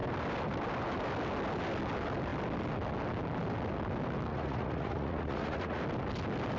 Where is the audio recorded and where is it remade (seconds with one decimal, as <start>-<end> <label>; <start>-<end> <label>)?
0.0-4.3 recorded; 4.3-5.8 remade; 5.8-6.6 recorded